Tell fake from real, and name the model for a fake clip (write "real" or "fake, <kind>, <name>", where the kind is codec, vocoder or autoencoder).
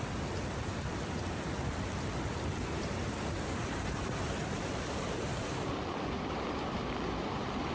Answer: fake, vocoder, BigVGAN v2